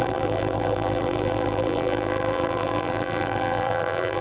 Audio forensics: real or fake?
fake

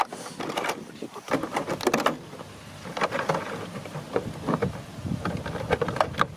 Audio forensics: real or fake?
real